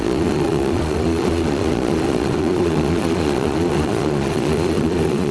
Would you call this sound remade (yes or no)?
yes